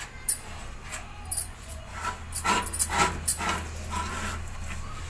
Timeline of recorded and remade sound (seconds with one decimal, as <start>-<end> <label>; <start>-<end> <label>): 0.0-1.4 recorded; 1.4-1.9 remade; 1.9-5.1 recorded